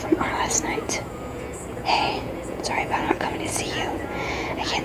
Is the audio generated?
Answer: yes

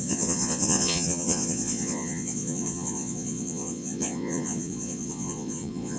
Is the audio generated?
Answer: yes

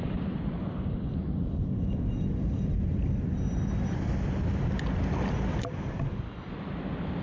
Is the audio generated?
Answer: no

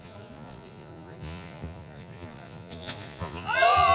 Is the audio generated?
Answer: yes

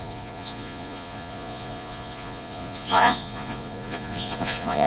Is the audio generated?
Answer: yes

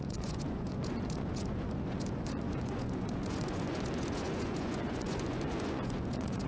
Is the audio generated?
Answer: yes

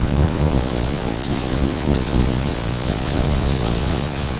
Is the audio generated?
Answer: yes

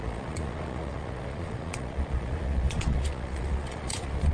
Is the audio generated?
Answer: yes